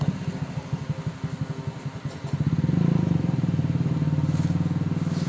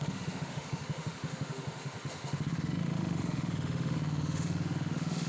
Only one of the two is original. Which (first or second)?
first